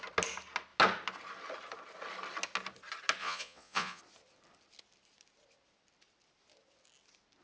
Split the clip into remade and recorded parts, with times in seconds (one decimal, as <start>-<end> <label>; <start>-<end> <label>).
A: 0.0-3.2 recorded; 3.2-4.0 remade; 4.0-7.4 recorded